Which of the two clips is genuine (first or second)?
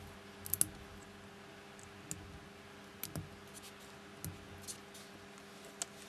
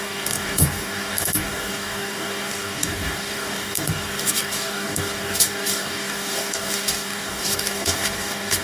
first